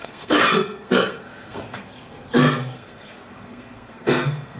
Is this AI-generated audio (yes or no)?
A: yes